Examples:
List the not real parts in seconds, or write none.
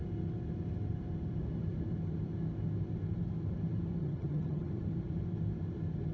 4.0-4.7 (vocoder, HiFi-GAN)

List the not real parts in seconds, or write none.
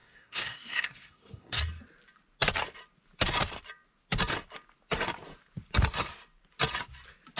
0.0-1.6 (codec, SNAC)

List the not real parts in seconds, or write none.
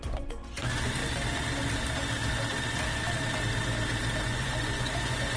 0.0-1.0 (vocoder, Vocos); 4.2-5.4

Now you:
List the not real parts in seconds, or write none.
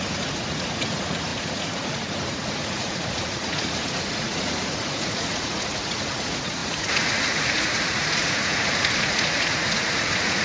0.0-10.4 (vocoder, Vocos)